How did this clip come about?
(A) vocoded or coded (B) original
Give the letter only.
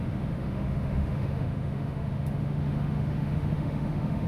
A